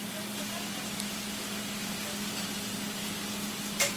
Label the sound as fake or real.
real